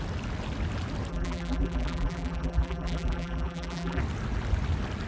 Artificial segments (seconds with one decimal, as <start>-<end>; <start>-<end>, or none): 1.1-4.0